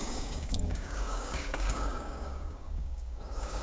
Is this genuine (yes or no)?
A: no